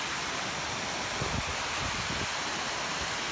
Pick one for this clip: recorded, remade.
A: recorded